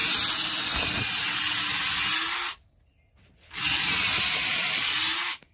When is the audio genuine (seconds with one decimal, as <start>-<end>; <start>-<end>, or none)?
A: 0.0-5.5